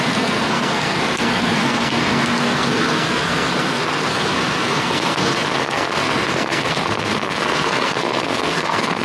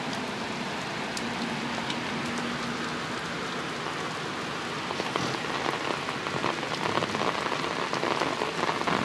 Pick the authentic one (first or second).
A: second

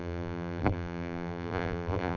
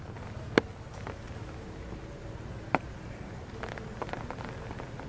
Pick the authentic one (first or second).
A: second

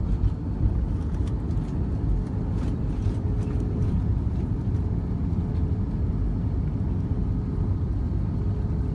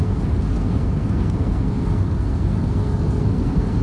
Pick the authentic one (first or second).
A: first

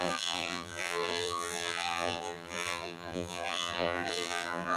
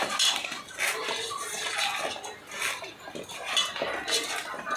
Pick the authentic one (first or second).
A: second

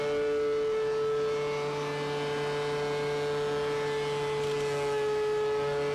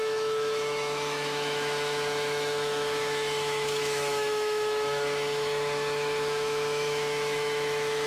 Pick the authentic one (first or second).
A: first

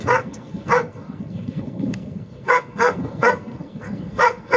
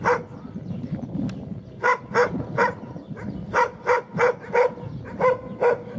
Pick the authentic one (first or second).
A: second